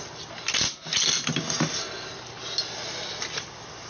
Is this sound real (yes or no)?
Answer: yes